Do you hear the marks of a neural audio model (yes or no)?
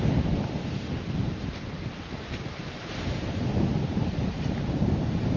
yes